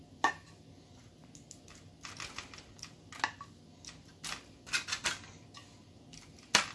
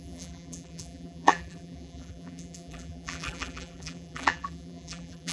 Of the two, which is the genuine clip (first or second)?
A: first